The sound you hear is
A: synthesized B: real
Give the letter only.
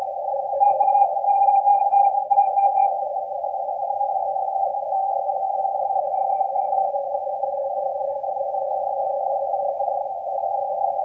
A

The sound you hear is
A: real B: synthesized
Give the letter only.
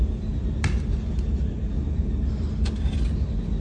A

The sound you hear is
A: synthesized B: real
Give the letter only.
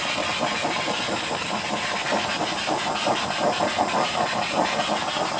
B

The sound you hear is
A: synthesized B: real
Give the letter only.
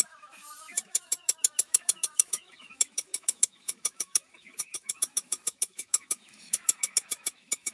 A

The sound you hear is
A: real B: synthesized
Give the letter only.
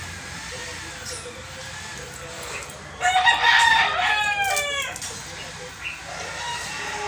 A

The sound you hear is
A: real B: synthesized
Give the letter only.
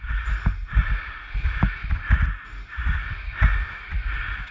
B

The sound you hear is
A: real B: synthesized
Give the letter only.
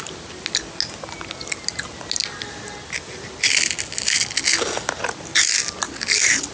A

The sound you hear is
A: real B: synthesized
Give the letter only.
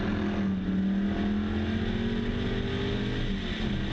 A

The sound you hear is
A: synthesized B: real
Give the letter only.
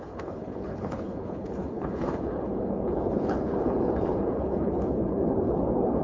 A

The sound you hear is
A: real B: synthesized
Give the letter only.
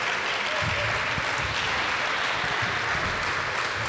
A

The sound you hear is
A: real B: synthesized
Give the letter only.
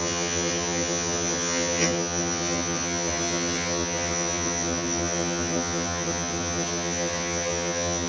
B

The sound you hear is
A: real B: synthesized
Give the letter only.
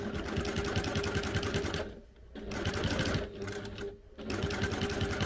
A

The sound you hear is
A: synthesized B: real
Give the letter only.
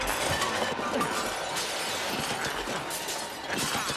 B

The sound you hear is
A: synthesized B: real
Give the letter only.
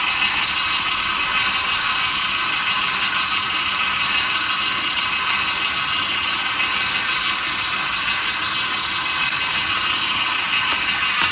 B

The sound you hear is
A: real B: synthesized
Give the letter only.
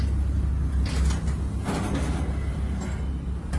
A